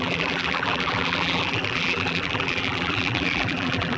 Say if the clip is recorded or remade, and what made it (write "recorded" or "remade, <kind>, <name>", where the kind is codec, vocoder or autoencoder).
remade, vocoder, BigVGAN v2